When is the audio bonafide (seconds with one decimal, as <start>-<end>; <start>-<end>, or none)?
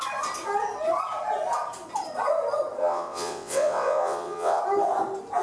0.0-2.8; 4.6-5.4